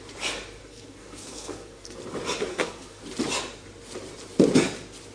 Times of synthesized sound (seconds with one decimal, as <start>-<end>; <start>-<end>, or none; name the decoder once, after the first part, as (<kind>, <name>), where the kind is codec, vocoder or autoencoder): 0.6-2.0 (codec, SNAC); 2.5-3.0